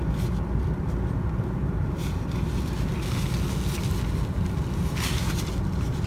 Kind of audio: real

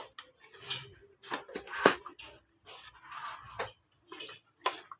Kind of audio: real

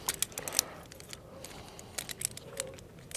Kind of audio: real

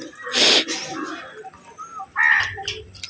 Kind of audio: real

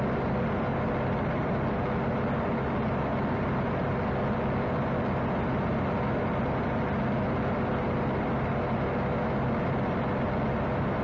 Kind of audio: real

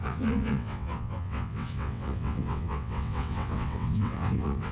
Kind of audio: fake